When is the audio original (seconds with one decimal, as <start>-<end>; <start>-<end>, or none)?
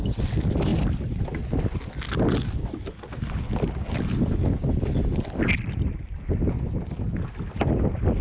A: 0.0-8.2